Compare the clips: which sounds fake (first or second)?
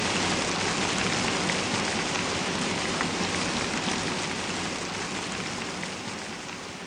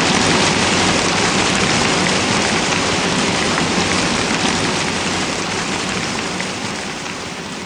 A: second